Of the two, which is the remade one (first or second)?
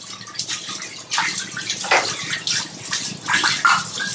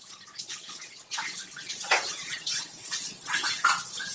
second